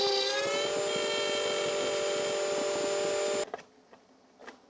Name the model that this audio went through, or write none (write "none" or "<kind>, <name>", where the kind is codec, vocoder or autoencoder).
none